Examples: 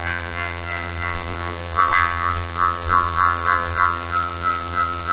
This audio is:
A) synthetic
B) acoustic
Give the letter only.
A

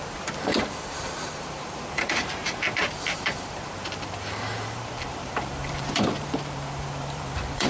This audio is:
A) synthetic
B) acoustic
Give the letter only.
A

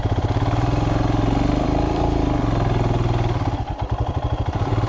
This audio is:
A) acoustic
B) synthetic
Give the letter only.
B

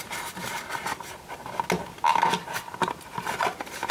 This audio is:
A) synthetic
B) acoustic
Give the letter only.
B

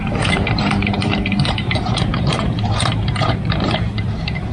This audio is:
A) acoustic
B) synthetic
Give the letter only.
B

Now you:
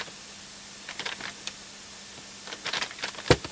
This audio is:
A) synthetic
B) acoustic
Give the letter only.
B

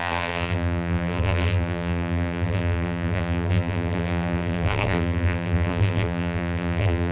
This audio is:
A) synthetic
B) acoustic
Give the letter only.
A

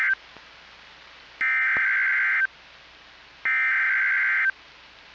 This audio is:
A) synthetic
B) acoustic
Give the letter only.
B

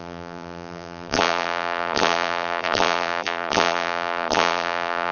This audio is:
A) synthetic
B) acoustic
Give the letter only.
A